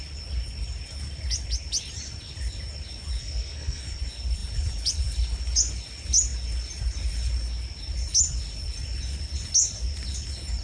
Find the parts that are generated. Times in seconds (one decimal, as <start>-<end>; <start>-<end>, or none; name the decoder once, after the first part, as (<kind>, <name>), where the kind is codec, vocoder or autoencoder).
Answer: 3.2-3.8 (codec, SNAC)